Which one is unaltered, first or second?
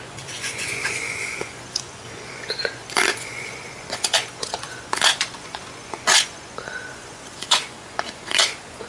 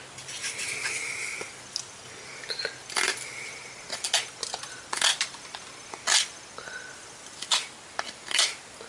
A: second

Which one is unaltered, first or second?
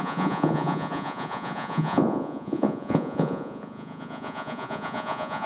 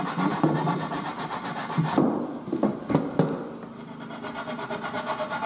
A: second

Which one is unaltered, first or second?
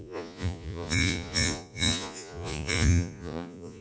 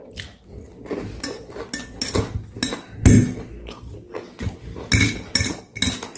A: second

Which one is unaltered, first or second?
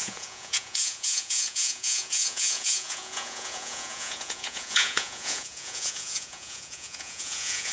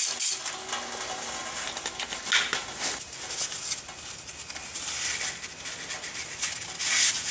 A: second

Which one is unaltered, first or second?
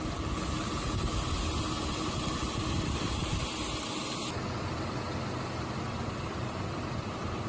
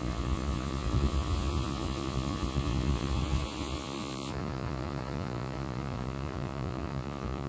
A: first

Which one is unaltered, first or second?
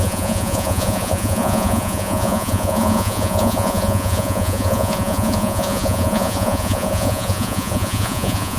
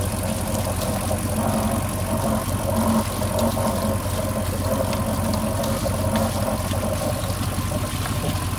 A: second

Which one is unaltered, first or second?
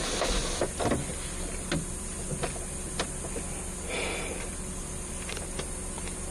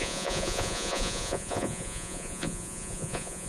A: first